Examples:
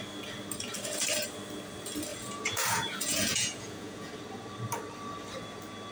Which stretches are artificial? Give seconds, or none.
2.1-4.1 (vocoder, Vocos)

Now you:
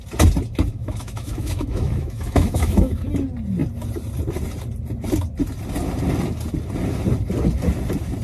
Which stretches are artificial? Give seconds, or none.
0.7-3.1 (autoencoder, DAC-VAE)